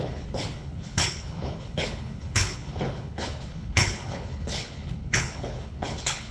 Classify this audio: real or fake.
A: fake